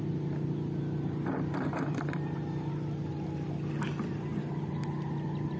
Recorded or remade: recorded